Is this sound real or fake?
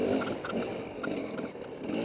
real